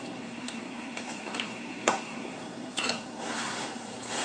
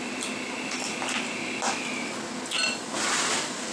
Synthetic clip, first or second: first